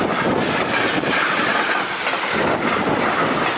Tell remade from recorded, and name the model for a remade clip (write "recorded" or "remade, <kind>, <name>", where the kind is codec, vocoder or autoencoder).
recorded